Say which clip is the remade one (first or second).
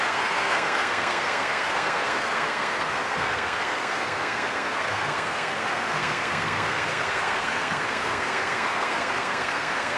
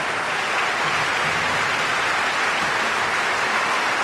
first